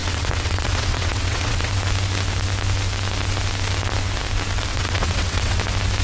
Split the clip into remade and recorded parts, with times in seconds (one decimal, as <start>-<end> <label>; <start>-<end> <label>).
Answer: 0.0-1.7 remade; 1.7-4.7 recorded; 4.7-5.6 remade; 5.6-6.0 recorded